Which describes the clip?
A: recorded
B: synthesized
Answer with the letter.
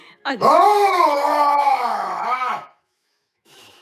B